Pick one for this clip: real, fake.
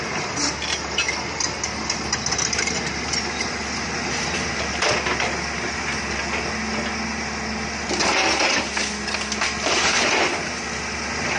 real